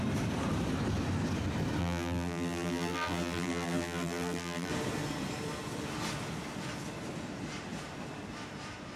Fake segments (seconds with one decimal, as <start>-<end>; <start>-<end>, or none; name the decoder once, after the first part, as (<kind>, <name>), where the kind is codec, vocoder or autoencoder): 1.8-4.7 (vocoder, BigVGAN v2)